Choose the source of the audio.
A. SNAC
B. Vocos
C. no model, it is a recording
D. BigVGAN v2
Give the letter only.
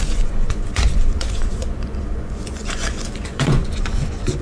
B